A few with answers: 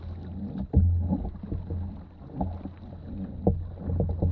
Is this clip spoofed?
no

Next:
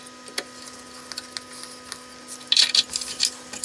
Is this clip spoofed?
no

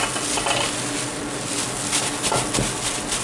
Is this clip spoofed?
no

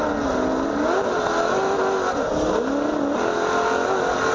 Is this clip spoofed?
no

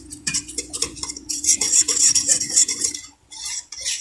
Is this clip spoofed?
yes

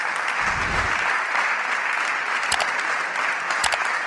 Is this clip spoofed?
no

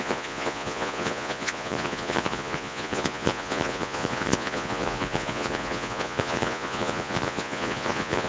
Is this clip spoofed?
yes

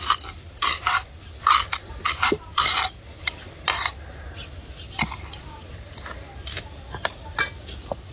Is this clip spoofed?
no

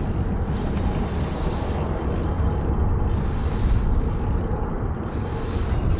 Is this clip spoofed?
no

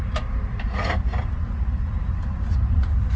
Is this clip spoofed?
no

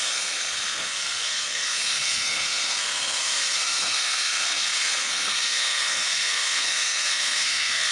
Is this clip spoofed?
yes